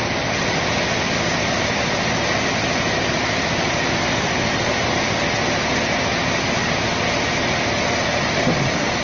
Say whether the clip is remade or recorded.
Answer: recorded